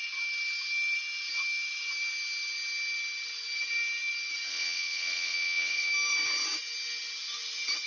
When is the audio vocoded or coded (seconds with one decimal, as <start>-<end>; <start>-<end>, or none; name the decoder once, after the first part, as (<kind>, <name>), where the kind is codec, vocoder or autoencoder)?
4.5-5.9 (vocoder, WaveNeXt)